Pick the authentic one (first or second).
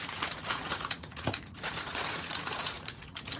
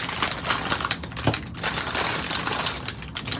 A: second